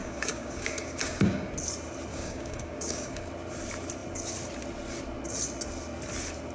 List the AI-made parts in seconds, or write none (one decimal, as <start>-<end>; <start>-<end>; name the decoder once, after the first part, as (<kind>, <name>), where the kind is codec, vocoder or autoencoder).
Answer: 0.0-1.5 (codec, DAC); 2.1-3.3